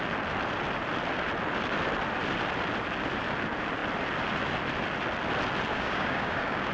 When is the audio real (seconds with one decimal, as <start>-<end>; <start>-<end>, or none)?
0.0-5.7